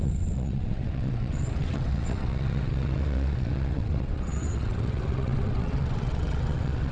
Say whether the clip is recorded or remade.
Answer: remade